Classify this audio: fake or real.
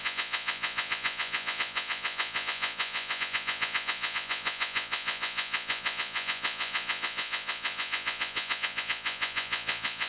fake